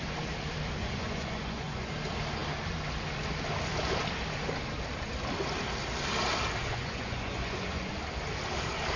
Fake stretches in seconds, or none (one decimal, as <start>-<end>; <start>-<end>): 0.8-1.9; 6.6-7.9